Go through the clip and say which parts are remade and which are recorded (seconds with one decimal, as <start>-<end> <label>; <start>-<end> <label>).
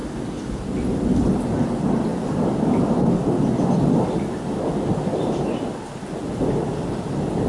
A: 0.0-7.5 recorded